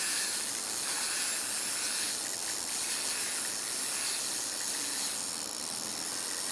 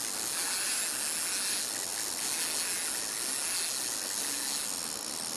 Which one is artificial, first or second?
first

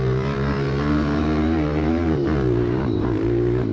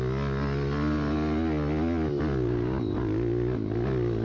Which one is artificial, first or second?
first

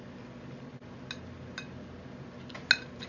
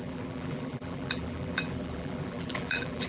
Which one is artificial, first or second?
second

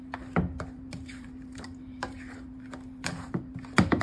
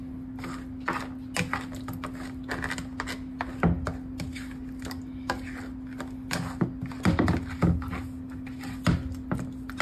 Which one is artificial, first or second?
first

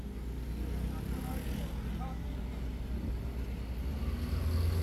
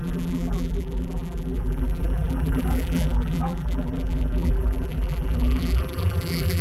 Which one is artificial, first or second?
second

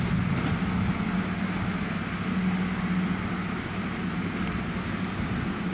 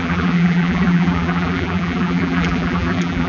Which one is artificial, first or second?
second